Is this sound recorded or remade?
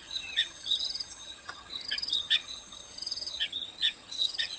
remade